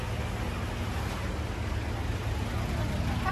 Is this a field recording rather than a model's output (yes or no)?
yes